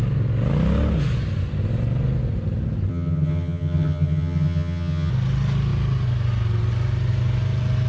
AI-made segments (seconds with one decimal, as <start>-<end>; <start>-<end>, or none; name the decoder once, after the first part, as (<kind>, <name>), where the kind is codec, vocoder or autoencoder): 2.9-5.1 (vocoder, HiFi-GAN)